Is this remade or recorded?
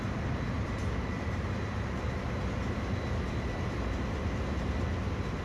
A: recorded